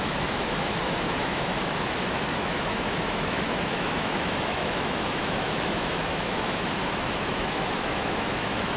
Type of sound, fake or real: fake